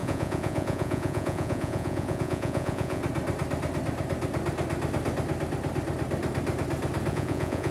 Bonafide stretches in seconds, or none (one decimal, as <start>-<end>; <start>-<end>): 3.0-7.1